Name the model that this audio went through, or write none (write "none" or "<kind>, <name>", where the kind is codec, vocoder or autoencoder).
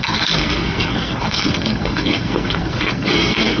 codec, SNAC